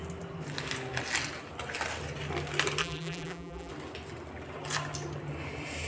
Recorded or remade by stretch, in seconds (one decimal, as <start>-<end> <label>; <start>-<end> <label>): 0.0-2.8 recorded; 2.8-3.7 remade; 3.7-5.9 recorded